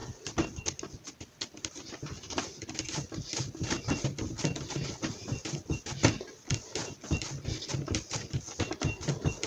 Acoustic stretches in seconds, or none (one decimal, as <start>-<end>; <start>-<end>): 0.0-9.5